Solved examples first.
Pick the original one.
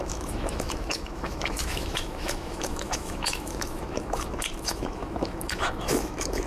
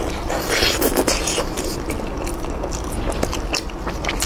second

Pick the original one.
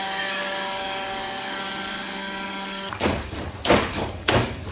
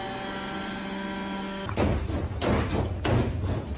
second